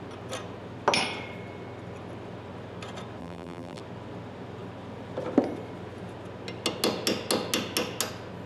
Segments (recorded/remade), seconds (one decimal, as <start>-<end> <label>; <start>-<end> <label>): 0.0-3.2 recorded; 3.2-3.8 remade; 3.8-8.5 recorded